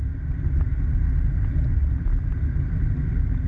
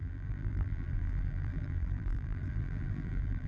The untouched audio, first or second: first